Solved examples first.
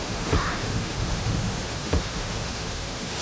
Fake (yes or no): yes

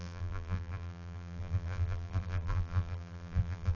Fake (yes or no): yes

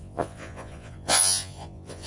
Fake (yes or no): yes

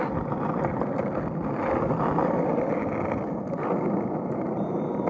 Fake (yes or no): no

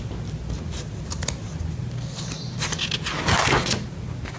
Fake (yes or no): no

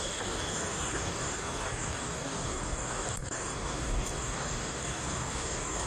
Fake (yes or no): yes